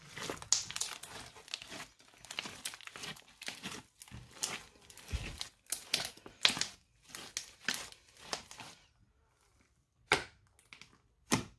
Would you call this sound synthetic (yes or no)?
no